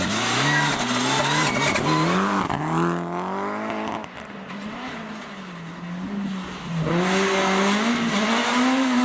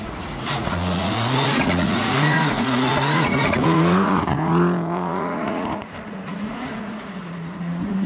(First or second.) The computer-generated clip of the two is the second